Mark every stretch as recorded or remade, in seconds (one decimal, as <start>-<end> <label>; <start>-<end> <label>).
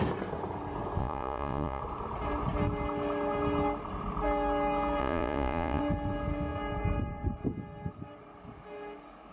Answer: 0.0-1.0 recorded; 1.0-1.8 remade; 1.8-5.0 recorded; 5.0-5.8 remade; 5.8-9.3 recorded